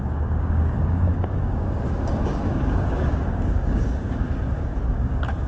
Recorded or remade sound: remade